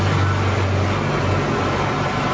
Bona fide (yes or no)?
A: yes